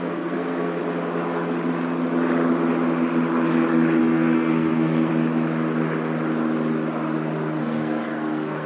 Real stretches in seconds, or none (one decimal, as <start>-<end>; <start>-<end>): 0.8-4.0; 5.1-7.6